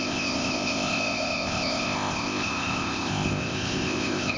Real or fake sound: fake